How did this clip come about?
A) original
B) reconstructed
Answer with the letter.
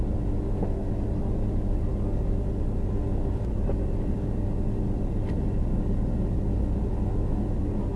A